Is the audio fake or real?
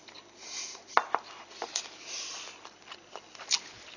real